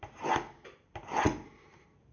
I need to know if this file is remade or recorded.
recorded